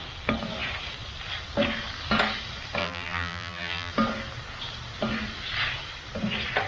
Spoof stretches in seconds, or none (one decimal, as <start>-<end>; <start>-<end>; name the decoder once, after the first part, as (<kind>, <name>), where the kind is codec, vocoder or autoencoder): 2.8-3.9 (vocoder, BigVGAN v2)